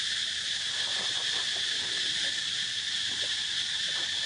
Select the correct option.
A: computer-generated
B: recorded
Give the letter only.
B